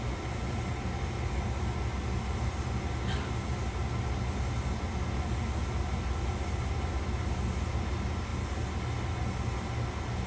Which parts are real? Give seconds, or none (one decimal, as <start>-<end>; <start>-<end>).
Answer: 0.0-10.3